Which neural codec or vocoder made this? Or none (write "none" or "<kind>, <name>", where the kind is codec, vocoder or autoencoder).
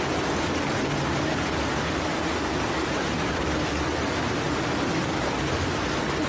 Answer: none